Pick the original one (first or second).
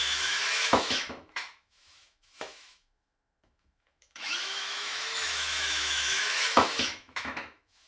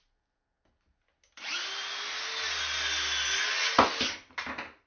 second